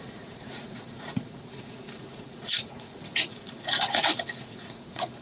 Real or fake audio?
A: fake